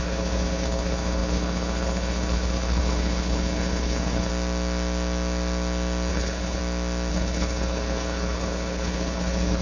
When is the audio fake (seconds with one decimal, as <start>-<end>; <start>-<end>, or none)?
0.0-4.3; 6.1-6.6; 7.1-9.6